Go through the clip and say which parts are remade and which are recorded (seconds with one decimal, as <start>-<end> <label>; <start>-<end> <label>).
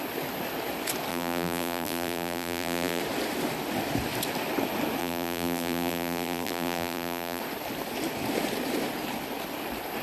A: 0.0-1.1 recorded; 1.1-3.0 remade; 3.0-5.0 recorded; 5.0-7.4 remade; 7.4-10.0 recorded